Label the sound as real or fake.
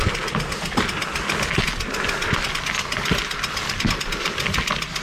real